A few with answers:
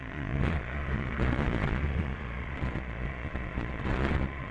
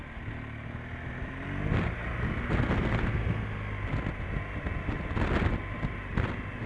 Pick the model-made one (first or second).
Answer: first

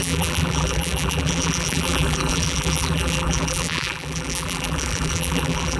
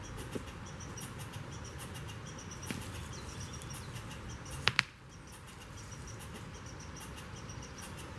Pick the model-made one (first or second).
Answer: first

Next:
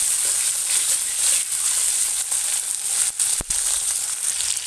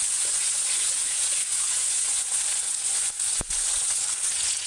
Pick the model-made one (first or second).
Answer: second